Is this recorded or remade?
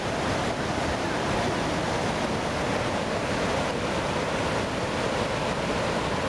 recorded